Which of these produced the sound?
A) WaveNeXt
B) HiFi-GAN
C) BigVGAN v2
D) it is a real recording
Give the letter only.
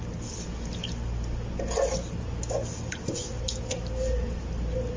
D